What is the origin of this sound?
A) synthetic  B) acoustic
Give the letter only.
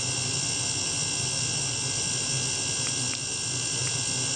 B